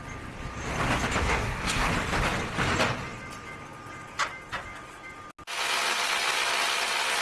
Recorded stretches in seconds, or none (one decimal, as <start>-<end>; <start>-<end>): 0.0-1.2; 1.9-7.2